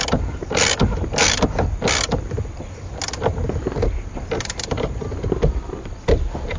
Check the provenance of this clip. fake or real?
real